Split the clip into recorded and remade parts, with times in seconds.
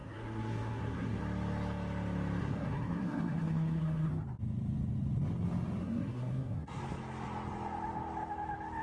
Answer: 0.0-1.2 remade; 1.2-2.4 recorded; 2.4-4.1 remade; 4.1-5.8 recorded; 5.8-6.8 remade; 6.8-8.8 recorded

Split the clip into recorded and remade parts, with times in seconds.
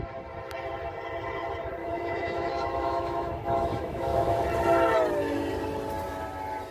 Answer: 0.0-1.8 recorded; 1.8-4.4 remade; 4.4-6.7 recorded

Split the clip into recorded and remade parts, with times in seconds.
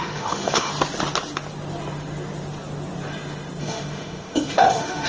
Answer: 0.0-0.7 remade; 0.7-3.6 recorded; 3.6-5.1 remade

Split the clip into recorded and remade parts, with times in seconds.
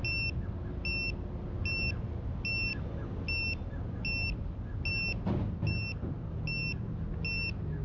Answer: 0.0-7.8 recorded